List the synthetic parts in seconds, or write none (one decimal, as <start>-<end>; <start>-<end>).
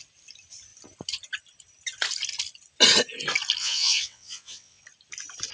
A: 3.6-4.8